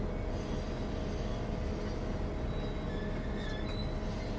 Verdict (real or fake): real